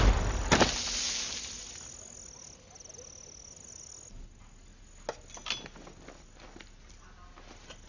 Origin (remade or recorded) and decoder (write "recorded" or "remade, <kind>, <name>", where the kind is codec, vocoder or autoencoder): recorded